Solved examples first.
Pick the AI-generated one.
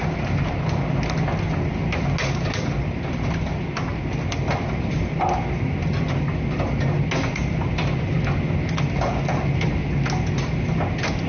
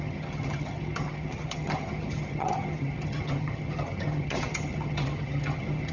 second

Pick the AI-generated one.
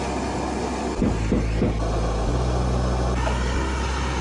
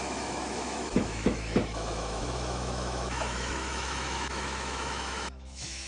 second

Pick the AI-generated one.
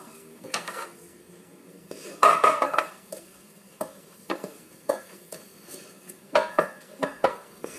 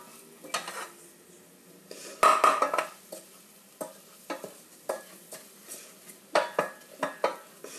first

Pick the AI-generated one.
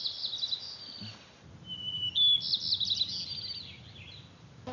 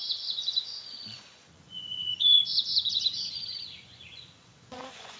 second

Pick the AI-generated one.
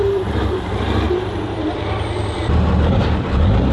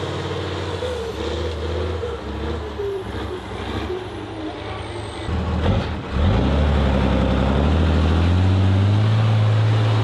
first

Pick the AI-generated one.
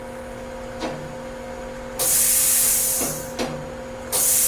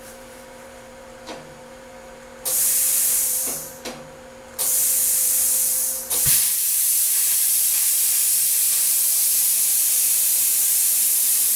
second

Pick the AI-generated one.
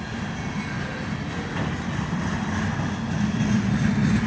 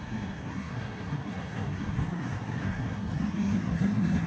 second